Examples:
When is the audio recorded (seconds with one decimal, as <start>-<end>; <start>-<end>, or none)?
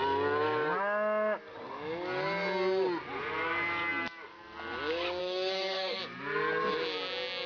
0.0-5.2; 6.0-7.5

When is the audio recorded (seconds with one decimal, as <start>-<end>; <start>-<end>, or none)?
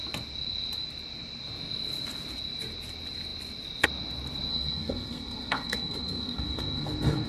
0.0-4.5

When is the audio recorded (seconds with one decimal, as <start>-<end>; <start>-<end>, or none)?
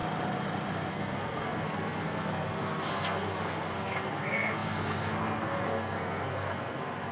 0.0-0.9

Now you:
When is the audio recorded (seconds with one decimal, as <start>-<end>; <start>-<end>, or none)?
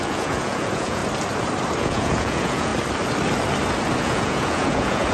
1.0-1.8; 2.7-4.0